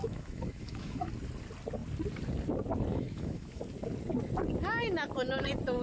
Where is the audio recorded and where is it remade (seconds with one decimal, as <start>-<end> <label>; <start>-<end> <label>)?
0.0-1.1 remade; 1.1-2.9 recorded; 2.9-3.6 remade; 3.6-5.8 recorded